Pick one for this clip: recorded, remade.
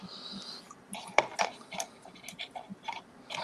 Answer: recorded